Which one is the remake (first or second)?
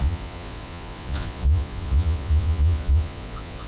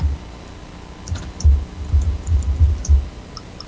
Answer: first